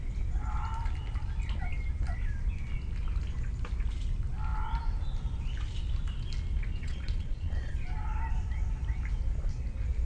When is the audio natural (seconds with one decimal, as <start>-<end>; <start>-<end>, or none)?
0.0-6.7; 7.7-10.0